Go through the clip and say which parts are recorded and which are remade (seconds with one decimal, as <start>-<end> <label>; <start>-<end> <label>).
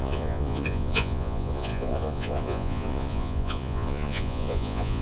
0.0-5.0 remade